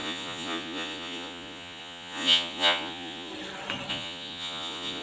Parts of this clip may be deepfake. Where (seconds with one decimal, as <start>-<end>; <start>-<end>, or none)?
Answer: 0.0-3.3; 3.9-5.0